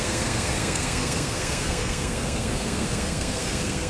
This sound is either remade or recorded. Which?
remade